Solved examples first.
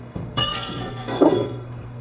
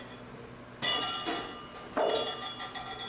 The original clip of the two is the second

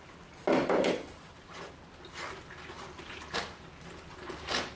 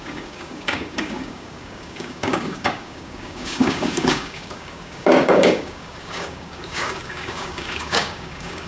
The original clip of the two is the first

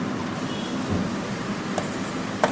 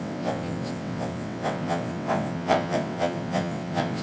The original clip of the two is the first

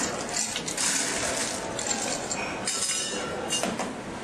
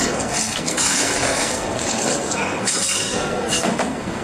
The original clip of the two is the first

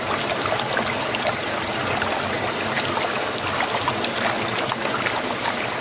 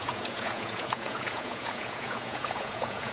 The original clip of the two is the first